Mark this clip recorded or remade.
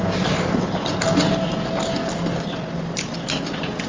recorded